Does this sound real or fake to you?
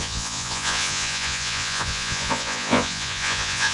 fake